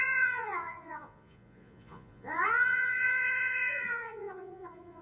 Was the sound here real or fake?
fake